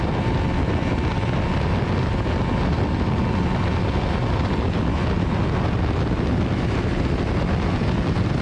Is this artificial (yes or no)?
no